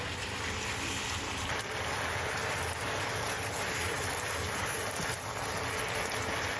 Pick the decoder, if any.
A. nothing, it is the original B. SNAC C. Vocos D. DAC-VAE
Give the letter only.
A